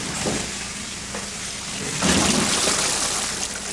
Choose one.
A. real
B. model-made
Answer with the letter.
A